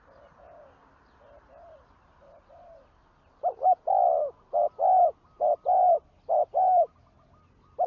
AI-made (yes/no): no